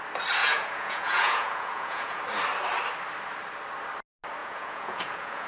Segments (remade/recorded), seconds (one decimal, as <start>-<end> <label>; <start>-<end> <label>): 0.0-0.4 recorded; 0.4-2.2 remade; 2.2-4.4 recorded; 4.4-5.5 remade